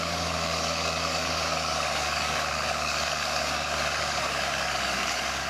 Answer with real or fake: fake